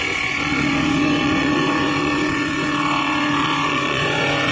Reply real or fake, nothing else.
fake